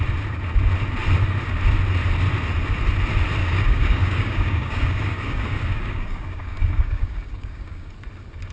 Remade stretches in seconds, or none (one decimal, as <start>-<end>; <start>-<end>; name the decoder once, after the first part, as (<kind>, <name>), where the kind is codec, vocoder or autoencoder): 3.4-7.9 (codec, DAC)